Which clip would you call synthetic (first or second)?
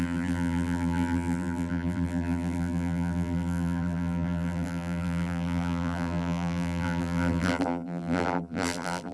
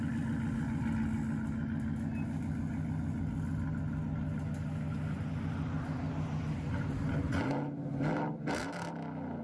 first